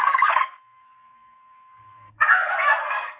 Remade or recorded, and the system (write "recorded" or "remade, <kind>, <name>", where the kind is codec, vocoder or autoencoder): remade, codec, SNAC